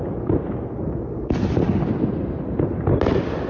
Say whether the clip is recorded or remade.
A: recorded